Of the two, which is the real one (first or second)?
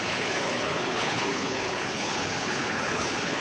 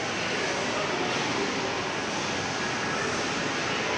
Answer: second